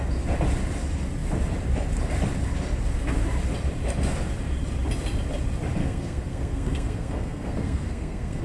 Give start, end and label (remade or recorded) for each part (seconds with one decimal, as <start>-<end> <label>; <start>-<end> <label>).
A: 0.0-5.8 recorded; 5.8-8.4 remade